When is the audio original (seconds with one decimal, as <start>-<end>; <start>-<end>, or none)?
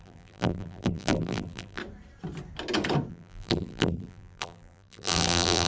1.8-3.1